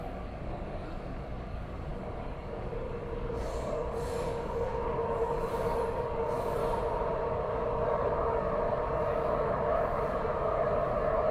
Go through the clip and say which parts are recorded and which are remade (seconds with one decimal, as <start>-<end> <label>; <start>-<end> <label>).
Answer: 0.0-6.6 remade; 6.6-7.3 recorded; 7.3-11.3 remade